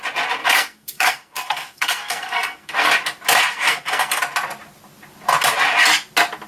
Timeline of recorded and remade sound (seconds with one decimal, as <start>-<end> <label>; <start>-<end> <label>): 0.0-0.4 recorded; 0.4-2.9 remade; 2.9-3.5 recorded; 3.5-4.2 remade; 4.2-6.5 recorded